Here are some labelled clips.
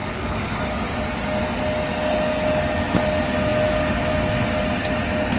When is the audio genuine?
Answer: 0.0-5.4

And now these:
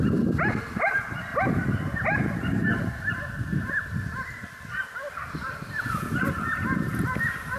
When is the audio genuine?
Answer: 0.0-1.3; 3.1-7.6

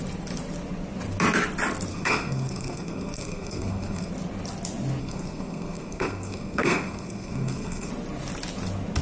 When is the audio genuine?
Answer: 0.0-1.9; 4.1-5.0; 7.9-9.0

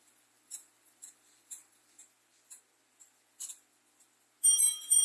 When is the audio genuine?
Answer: 2.0-4.5